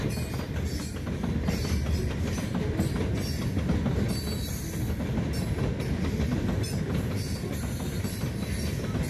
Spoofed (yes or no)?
no